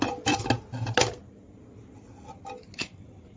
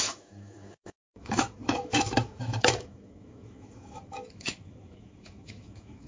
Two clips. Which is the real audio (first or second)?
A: first